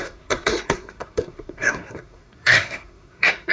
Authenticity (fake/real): fake